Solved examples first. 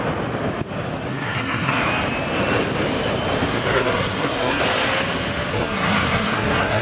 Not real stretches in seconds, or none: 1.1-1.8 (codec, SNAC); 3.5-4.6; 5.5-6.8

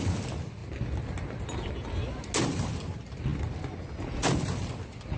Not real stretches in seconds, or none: none

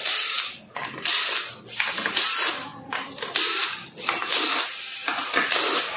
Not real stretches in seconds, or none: 5.0-6.0 (vocoder, BigVGAN v2)

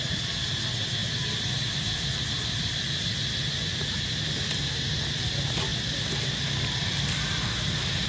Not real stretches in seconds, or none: 1.0-4.1 (vocoder, BigVGAN v2)